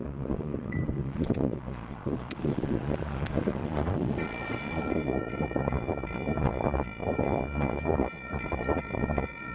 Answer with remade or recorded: remade